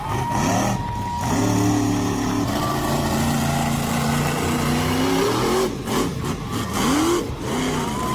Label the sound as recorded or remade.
recorded